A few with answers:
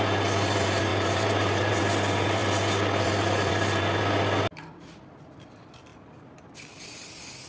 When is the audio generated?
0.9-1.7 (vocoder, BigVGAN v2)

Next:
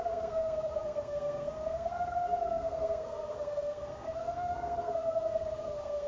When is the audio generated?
0.0-6.1 (codec, SNAC)

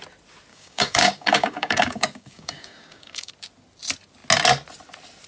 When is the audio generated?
0.5-3.3 (codec, DAC)

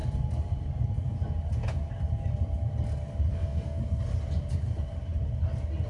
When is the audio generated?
3.3-3.8 (codec, SNAC)

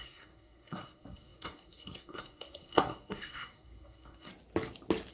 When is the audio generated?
0.0-4.3 (codec, SNAC)